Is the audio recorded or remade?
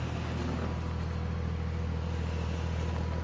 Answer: recorded